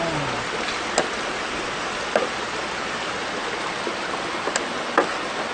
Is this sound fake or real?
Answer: real